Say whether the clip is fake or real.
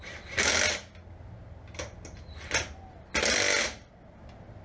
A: real